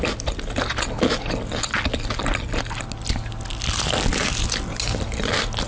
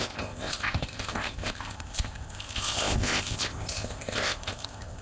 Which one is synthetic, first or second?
second